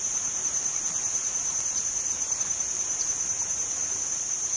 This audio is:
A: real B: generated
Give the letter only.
B